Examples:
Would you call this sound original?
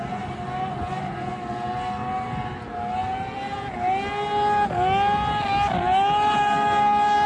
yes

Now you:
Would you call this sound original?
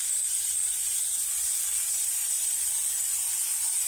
yes